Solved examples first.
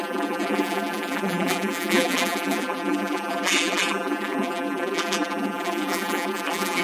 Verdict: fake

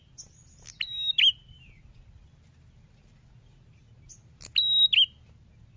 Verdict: real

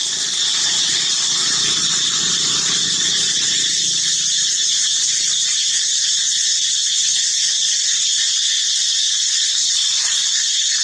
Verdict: real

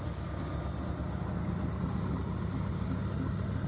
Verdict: real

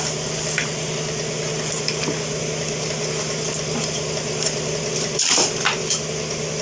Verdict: fake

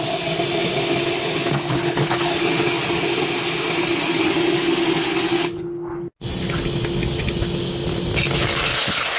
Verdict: real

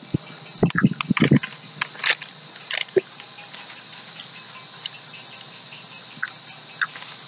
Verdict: real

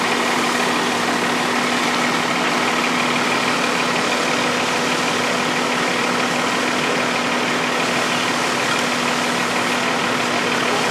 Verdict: real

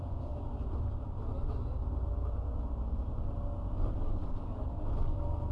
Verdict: real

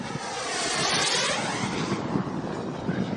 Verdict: real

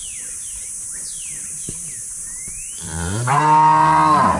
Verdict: fake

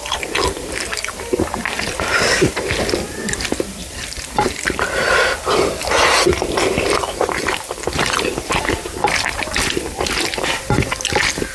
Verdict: fake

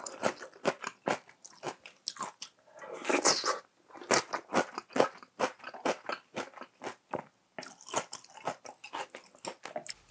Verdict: real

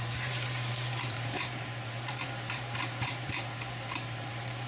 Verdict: fake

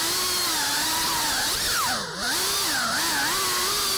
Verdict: real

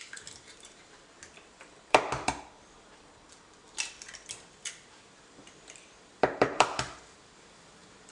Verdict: fake